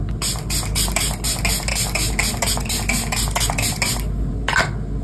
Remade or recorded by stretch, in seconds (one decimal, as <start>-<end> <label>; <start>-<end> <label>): 0.0-5.0 recorded